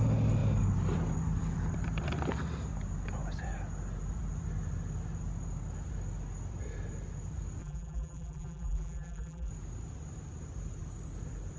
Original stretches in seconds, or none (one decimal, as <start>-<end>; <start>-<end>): 0.0-7.6; 9.5-11.6